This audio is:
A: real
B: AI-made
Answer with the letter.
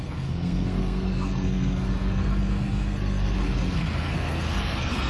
B